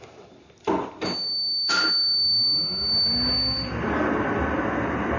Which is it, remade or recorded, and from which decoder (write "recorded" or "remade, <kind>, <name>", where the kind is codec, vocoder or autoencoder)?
recorded